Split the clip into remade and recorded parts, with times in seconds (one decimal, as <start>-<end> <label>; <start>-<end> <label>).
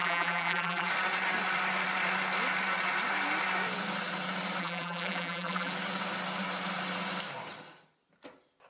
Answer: 0.0-0.9 remade; 0.9-4.6 recorded; 4.6-5.7 remade; 5.7-8.7 recorded